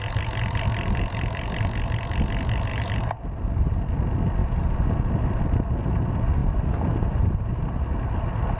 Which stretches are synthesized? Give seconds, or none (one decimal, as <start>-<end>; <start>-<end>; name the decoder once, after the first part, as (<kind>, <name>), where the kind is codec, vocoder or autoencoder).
2.7-3.5 (vocoder, BigVGAN v2); 4.4-5.4; 6.4-7.7

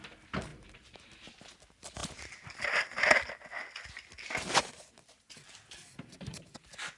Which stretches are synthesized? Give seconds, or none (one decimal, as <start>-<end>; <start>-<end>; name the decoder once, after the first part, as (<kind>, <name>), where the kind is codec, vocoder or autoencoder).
0.5-1.1 (vocoder, BigVGAN v2)

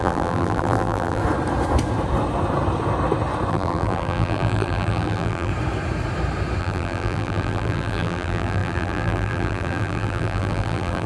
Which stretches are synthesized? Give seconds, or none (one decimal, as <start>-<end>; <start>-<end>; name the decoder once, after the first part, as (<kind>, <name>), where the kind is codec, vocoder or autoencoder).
0.0-1.2 (vocoder, BigVGAN v2); 3.5-5.5; 6.6-11.1

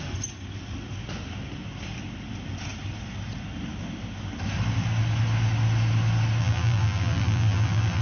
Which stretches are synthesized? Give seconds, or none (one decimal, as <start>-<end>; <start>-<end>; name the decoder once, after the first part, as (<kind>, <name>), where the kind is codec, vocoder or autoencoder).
6.4-8.0 (vocoder, BigVGAN v2)

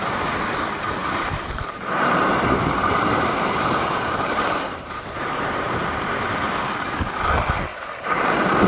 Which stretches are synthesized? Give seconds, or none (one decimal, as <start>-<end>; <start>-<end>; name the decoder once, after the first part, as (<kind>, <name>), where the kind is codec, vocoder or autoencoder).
1.0-6.2 (vocoder, BigVGAN v2)

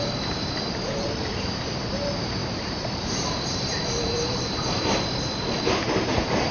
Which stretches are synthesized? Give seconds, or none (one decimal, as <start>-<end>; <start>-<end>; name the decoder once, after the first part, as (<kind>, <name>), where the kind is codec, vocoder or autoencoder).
0.0-6.5 (vocoder, BigVGAN v2)